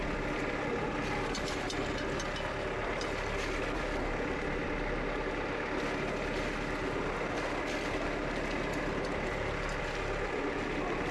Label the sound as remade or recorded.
recorded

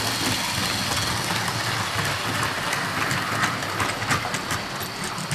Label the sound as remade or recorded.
recorded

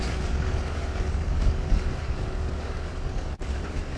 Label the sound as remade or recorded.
remade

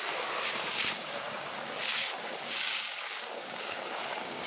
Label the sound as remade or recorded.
remade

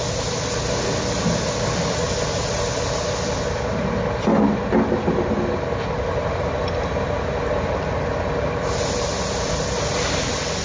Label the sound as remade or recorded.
recorded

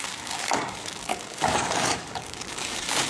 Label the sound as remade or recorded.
remade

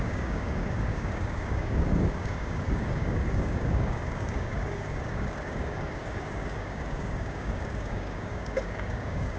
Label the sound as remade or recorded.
remade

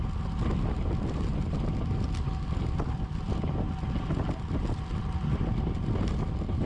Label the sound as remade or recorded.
recorded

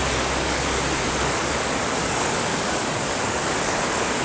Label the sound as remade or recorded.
remade